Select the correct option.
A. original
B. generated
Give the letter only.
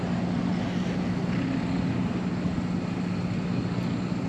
A